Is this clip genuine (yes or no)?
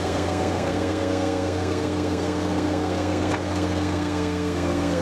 no